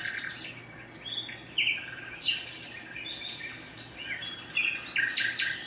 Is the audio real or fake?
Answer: real